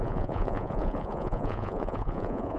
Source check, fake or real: fake